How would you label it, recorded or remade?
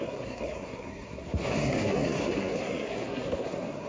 remade